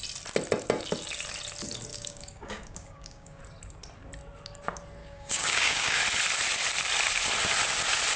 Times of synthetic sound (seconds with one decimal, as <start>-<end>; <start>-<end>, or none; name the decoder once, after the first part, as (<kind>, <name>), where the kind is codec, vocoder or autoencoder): 1.9-3.4 (codec, DAC); 5.0-6.0